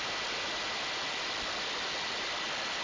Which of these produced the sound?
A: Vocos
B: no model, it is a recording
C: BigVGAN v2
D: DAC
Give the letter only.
B